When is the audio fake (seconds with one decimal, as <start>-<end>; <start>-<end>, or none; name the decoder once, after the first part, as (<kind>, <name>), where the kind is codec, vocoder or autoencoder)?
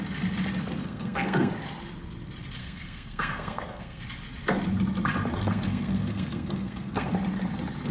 0.8-1.5 (codec, SNAC); 2.6-4.0; 5.4-7.1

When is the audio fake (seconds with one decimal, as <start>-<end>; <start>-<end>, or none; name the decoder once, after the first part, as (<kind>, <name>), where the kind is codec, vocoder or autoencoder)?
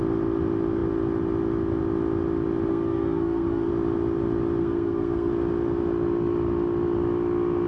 2.7-3.7 (codec, SNAC); 4.6-5.3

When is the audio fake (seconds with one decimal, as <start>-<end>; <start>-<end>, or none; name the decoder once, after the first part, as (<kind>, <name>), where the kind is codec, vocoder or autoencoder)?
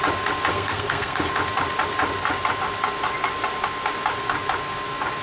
0.5-1.3 (codec, SNAC)